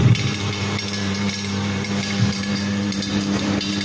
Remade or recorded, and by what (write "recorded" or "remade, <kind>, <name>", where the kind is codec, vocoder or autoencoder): remade, vocoder, BigVGAN v2